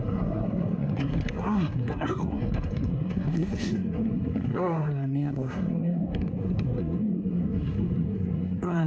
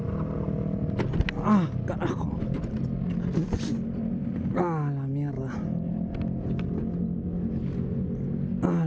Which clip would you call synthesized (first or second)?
first